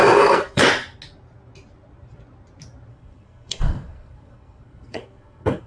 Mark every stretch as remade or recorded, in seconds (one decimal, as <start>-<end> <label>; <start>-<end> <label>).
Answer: 0.0-0.7 remade; 0.7-2.9 recorded; 2.9-5.7 remade